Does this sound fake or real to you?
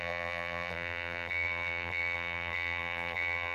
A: fake